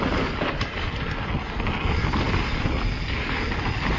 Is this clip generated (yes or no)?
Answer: no